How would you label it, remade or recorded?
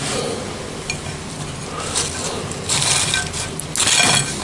recorded